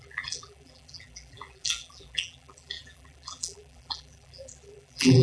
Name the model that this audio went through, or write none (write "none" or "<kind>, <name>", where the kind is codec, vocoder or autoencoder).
vocoder, BigVGAN v2